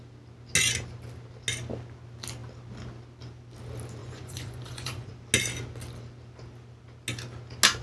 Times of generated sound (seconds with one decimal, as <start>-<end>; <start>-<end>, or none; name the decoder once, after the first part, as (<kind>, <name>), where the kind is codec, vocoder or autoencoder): 4.0-5.1 (vocoder, Vocos)